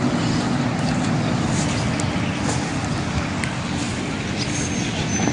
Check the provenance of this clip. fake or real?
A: real